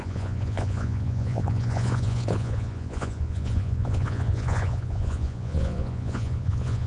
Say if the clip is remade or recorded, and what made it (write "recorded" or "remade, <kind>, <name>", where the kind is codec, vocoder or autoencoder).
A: remade, vocoder, Vocos